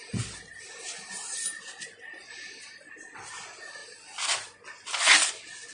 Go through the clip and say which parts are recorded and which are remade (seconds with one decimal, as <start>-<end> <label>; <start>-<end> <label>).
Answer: 0.0-5.7 recorded